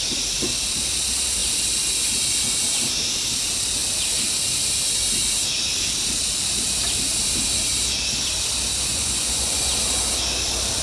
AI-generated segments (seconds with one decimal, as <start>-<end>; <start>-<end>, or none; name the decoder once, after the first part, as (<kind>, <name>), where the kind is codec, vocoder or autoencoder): 8.9-9.7 (vocoder, Vocos)